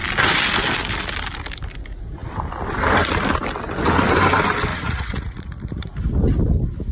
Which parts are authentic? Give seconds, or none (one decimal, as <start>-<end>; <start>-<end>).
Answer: 0.0-4.7; 6.0-6.9